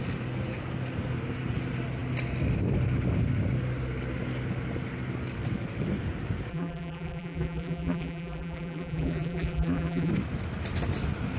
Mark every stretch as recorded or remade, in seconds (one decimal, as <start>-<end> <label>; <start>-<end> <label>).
0.0-6.5 recorded; 6.5-10.1 remade; 10.1-11.4 recorded